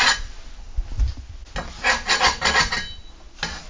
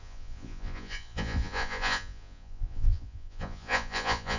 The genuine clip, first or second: first